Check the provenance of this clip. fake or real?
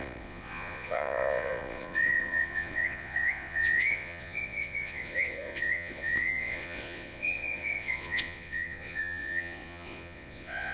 fake